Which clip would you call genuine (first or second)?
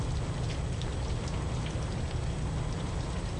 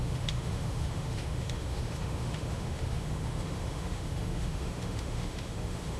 first